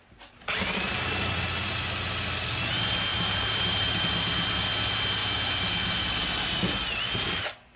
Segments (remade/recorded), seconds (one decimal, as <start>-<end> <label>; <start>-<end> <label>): 0.0-3.1 recorded; 3.1-4.0 remade; 4.0-5.2 recorded; 5.2-6.0 remade; 6.0-7.8 recorded